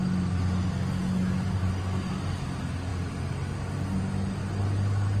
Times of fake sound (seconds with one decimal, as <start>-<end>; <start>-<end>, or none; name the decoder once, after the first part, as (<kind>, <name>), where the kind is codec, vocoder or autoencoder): none